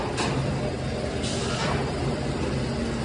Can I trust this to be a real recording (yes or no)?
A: yes